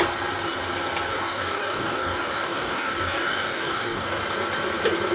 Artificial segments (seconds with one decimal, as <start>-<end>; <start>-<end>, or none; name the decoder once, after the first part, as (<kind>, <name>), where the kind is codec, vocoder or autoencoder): 1.1-4.2 (codec, DAC)